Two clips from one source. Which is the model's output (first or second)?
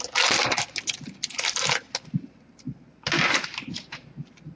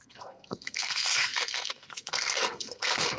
second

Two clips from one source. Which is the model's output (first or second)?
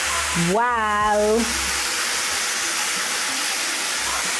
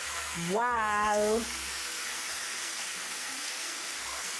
second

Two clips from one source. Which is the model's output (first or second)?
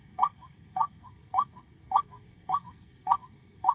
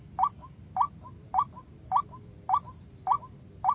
first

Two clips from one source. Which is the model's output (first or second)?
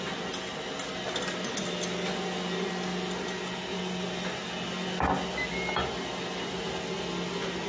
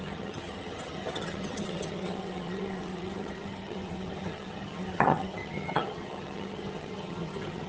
second